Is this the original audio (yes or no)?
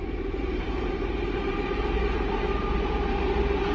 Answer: no